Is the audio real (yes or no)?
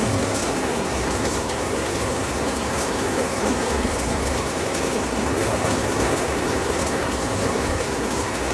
no